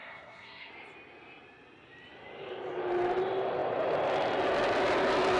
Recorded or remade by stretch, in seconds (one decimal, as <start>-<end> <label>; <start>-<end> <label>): 0.0-0.7 remade; 0.7-5.4 recorded